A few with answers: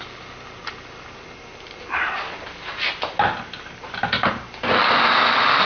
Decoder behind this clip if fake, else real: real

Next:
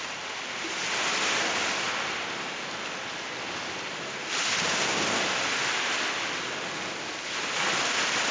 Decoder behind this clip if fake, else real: real